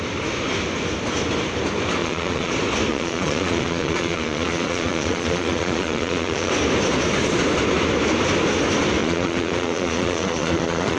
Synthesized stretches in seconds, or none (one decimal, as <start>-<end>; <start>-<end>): 2.0-2.5; 2.9-6.5; 9.0-11.0